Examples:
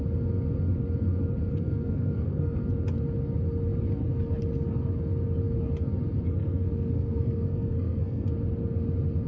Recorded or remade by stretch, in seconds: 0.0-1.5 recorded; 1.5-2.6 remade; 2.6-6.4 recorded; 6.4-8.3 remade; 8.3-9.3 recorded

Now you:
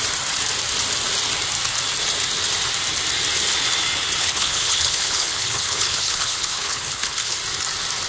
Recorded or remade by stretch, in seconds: 0.0-4.2 recorded; 4.2-7.4 remade; 7.4-8.1 recorded

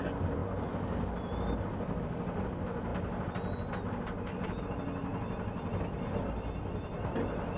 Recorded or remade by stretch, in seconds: 0.0-7.6 recorded

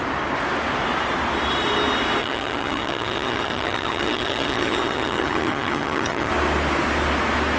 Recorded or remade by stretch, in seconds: 0.0-2.2 recorded; 2.2-6.3 remade; 6.3-7.6 recorded